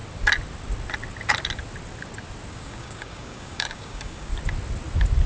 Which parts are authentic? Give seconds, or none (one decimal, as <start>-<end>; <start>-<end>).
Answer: 0.0-2.5; 4.3-5.3